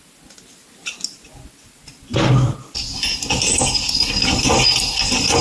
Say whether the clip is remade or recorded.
recorded